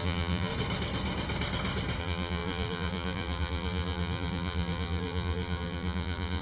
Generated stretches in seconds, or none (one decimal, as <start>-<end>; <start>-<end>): 0.0-0.5; 2.0-6.4